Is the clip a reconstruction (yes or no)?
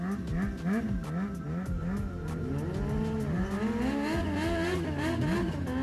no